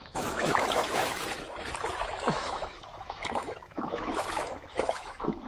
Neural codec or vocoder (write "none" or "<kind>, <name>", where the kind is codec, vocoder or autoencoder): autoencoder, DAC-VAE